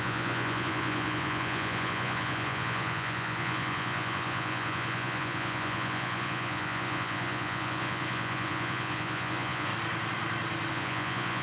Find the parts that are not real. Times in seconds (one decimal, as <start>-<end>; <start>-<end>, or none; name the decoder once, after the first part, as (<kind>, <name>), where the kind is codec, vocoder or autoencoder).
0.0-9.7 (vocoder, Vocos); 10.7-11.4